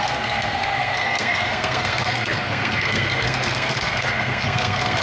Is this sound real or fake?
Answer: fake